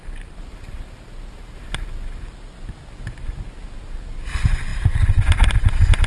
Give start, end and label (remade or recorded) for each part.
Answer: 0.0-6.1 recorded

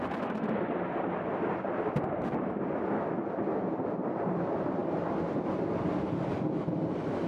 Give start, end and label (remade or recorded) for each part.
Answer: 0.0-7.3 recorded

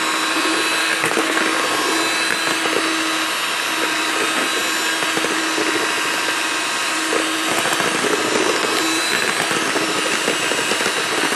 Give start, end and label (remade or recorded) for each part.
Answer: 0.0-0.8 recorded; 0.8-1.4 remade; 1.4-11.4 recorded

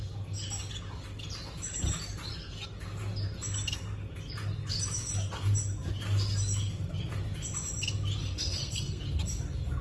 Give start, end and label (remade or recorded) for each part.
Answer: 0.0-8.2 recorded; 8.2-9.0 remade; 9.0-9.8 recorded